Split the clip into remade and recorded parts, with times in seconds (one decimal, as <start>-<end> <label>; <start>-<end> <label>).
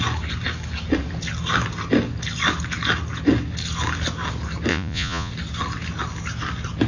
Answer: 0.0-4.7 recorded; 4.7-5.3 remade; 5.3-6.9 recorded